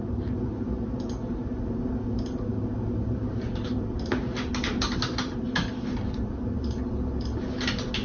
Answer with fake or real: real